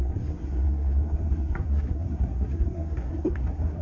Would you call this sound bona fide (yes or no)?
no